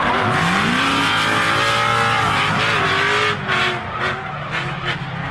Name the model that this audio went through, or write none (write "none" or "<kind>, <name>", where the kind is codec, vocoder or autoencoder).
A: none